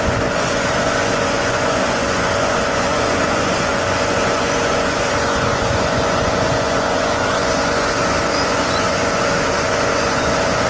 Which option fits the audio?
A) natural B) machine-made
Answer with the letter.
B